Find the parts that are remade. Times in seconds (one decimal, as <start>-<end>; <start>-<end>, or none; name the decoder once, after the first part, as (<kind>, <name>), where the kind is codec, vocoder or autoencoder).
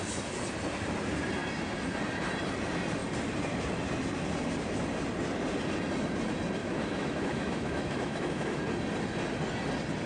6.6-8.6 (autoencoder, DAC-VAE)